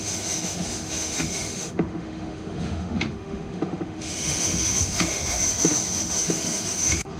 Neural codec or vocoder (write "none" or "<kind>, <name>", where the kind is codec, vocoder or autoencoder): autoencoder, DAC-VAE